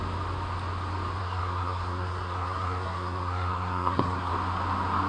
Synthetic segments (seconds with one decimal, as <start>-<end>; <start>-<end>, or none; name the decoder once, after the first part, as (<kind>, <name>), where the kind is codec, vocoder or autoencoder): 1.2-4.3 (codec, SNAC)

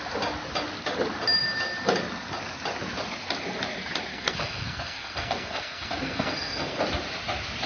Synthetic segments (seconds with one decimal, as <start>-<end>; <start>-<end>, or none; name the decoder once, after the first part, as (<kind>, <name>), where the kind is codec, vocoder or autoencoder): 4.1-6.8 (codec, SNAC)

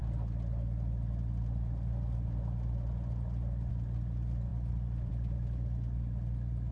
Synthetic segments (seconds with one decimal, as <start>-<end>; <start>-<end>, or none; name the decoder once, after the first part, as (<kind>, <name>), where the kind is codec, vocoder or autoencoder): none

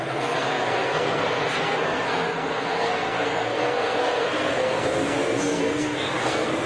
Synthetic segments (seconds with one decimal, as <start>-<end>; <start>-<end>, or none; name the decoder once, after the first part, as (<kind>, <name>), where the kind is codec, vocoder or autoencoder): 0.0-6.7 (codec, SNAC)

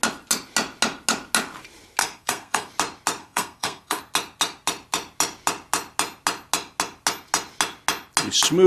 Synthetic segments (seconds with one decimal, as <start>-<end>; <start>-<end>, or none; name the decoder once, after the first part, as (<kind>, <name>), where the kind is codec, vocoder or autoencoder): 2.0-2.7 (codec, SNAC); 3.2-4.0

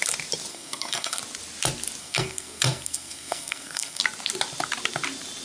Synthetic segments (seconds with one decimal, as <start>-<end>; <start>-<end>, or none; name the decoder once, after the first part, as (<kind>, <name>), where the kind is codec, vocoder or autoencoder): 0.5-1.2 (codec, SNAC); 2.0-4.0

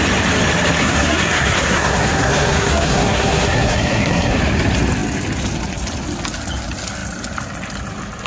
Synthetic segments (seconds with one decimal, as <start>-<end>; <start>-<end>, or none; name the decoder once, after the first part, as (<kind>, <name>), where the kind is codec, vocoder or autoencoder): 0.8-4.4 (codec, SNAC)